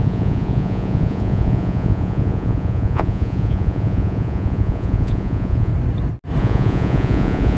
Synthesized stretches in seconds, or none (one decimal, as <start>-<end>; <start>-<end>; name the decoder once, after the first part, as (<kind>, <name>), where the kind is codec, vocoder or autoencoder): 0.0-5.7 (vocoder, Vocos); 6.4-7.6